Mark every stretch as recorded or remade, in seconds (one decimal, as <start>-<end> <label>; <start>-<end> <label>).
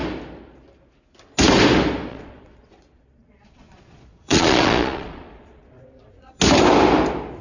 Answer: 0.0-2.1 recorded; 2.1-6.4 remade; 6.4-7.4 recorded